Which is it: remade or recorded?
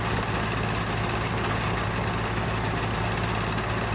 recorded